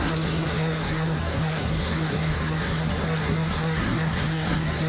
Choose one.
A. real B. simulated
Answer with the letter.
B